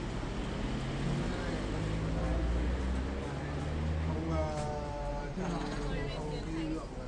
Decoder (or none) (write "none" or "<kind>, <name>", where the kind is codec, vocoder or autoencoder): none